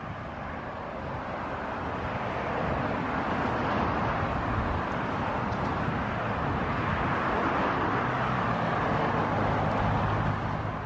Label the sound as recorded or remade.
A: recorded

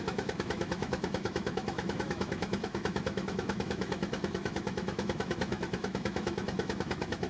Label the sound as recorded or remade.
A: remade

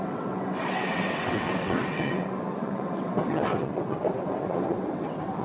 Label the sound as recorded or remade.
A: remade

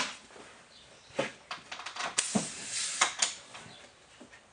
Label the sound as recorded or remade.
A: recorded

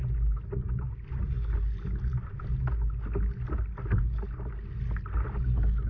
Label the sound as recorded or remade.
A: recorded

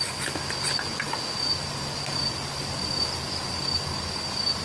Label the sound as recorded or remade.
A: recorded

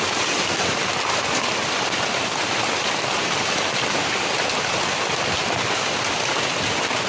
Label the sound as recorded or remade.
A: recorded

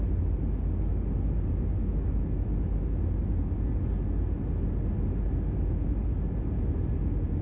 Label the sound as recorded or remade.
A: recorded